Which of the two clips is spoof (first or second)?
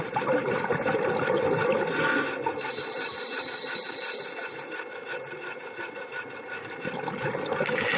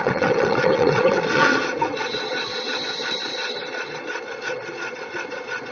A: second